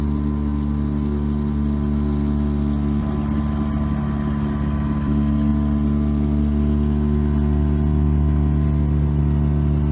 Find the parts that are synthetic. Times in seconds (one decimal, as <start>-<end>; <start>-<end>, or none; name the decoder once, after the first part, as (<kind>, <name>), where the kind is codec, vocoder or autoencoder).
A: none